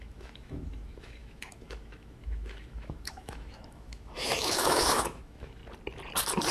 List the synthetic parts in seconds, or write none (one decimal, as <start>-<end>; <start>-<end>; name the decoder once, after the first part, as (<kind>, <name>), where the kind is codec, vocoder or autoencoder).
0.0-5.6 (autoencoder, DAC-VAE)